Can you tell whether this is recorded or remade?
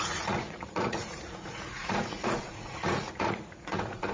remade